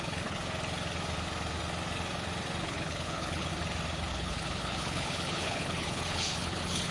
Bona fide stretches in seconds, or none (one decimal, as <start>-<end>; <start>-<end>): 0.4-2.6; 3.5-4.1